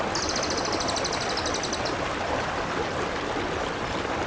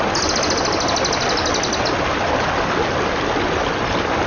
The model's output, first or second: first